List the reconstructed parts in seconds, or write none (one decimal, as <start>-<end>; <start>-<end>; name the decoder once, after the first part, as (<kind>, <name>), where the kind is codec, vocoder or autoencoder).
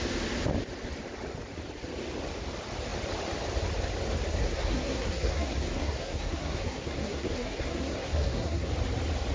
4.3-8.7 (codec, SNAC)